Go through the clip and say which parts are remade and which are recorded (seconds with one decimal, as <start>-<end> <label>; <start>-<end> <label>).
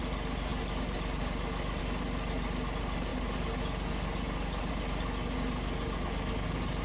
0.0-6.8 recorded